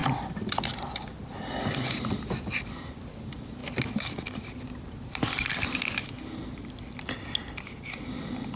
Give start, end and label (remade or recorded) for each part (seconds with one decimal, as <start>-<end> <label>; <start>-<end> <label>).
0.0-8.6 recorded